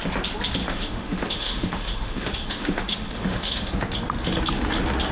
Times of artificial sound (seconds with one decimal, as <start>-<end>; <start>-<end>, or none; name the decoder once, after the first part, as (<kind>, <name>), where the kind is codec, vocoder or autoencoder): 0.6-3.7 (autoencoder, DAC-VAE)